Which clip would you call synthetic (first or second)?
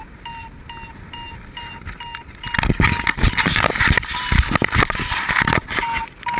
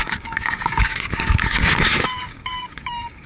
second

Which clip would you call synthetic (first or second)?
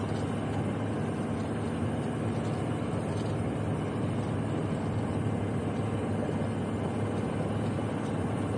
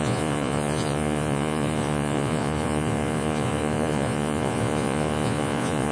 second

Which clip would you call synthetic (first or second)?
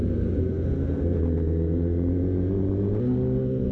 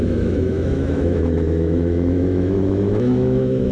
second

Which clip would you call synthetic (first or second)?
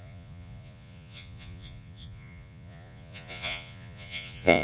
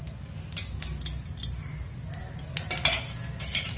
first